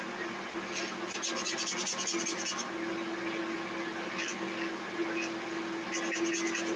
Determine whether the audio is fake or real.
real